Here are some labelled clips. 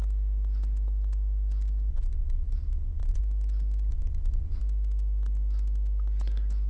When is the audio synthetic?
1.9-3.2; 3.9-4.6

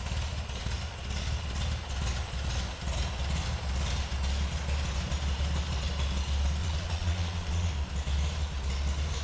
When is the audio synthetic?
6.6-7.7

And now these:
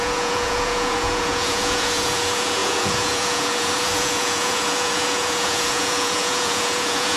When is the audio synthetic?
0.0-7.2